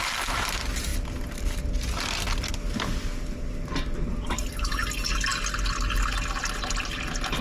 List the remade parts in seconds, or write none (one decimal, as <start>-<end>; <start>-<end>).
none